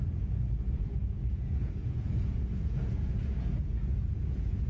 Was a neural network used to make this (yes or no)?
yes